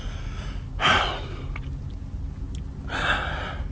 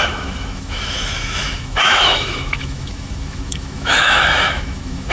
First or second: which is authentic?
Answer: first